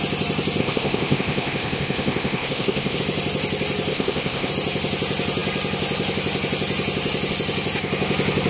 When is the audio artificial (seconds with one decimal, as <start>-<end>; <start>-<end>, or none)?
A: 0.6-3.0; 3.9-4.5